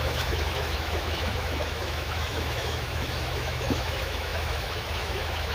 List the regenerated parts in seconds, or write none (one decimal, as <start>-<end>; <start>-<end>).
0.0-5.5